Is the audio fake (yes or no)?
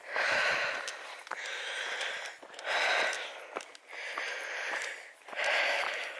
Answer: no